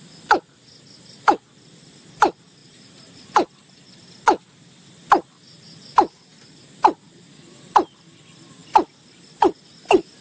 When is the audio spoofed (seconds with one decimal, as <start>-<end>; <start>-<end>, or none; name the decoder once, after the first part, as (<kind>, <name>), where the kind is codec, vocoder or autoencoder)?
2.6-3.9 (vocoder, BigVGAN v2)